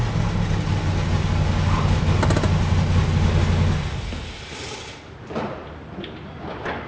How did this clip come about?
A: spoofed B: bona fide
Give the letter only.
B